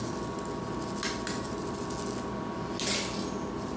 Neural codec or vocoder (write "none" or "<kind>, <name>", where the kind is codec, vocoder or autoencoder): none